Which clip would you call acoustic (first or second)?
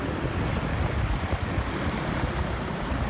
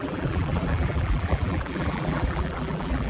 first